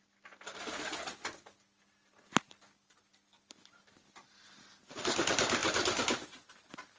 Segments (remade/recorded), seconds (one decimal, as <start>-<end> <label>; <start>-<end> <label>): 0.0-7.0 recorded